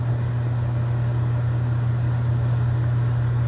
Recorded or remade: recorded